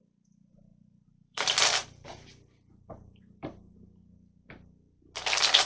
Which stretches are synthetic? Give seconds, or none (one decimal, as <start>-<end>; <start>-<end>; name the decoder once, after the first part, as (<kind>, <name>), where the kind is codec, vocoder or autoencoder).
0.0-4.0 (vocoder, BigVGAN v2)